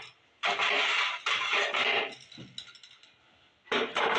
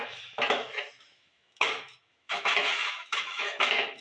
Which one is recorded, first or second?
first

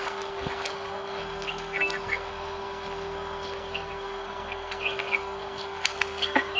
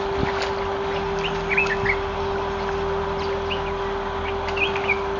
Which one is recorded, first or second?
second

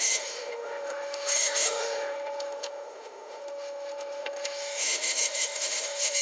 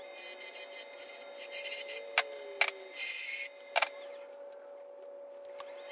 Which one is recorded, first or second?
second